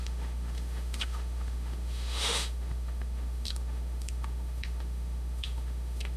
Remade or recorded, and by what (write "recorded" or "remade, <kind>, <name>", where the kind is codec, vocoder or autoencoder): remade, autoencoder, DAC-VAE